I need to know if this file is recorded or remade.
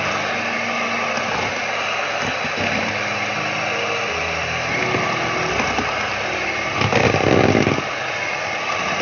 remade